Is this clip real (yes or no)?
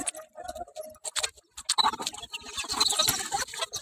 yes